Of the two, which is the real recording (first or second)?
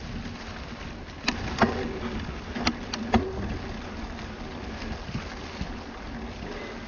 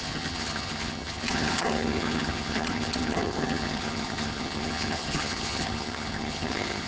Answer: first